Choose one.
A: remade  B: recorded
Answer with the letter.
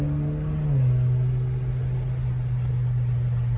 B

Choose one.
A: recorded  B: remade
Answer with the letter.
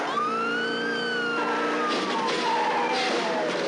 A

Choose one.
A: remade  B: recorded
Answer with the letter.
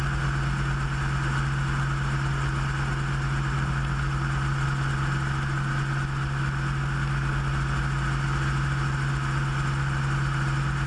B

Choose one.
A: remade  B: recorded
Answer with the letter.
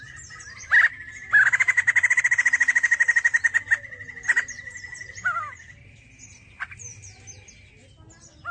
B